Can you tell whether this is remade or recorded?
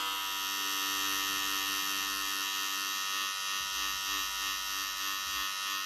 recorded